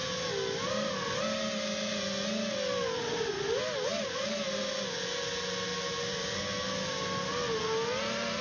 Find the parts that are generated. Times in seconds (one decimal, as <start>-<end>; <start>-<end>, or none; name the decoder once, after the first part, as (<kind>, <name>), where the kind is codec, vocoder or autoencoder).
none